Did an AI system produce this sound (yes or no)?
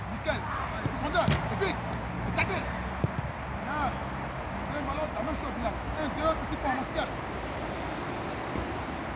no